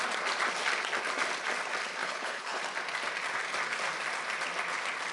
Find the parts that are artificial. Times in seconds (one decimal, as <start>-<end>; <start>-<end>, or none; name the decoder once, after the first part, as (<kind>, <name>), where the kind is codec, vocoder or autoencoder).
2.0-2.6 (codec, HILCodec)